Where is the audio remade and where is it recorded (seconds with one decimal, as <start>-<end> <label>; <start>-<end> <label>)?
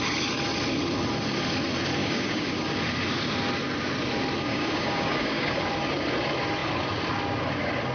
0.0-2.0 recorded; 2.0-2.5 remade; 2.5-4.5 recorded; 4.5-5.6 remade; 5.6-7.9 recorded